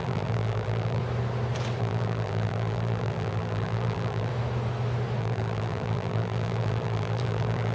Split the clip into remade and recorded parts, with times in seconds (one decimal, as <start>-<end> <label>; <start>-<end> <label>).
0.0-1.0 remade; 1.0-1.8 recorded; 1.8-4.3 remade; 4.3-5.2 recorded; 5.2-7.7 remade